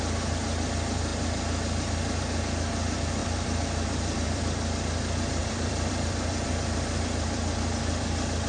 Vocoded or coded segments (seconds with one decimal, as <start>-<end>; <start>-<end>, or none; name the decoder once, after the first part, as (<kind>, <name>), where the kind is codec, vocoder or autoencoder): 3.2-4.4 (vocoder, BigVGAN v2); 5.4-7.6